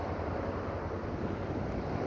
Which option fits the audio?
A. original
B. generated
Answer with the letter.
A